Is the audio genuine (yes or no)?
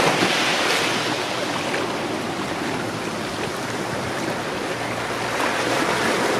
yes